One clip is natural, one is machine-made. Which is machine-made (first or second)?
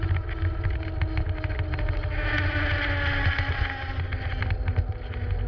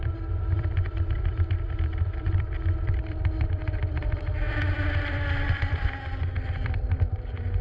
second